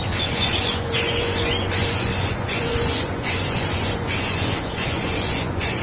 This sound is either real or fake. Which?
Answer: fake